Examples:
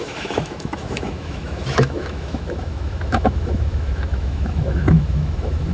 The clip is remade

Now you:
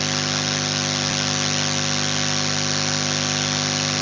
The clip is recorded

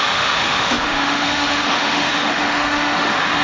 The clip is remade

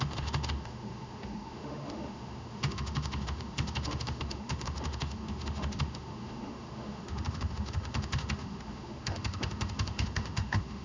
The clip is remade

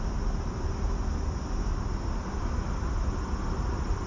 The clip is recorded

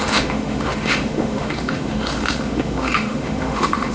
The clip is remade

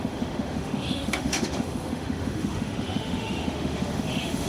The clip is remade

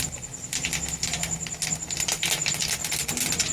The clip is recorded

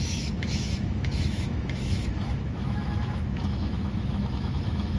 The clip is remade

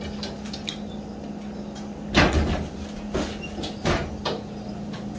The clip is recorded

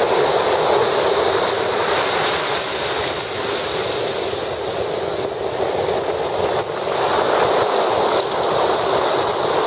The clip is recorded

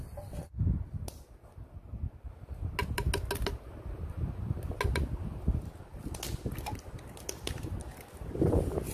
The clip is recorded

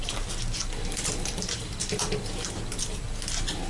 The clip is recorded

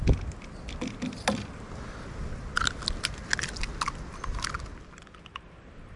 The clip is recorded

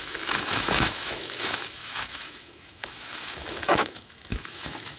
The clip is remade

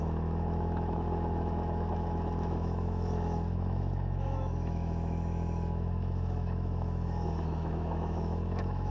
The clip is remade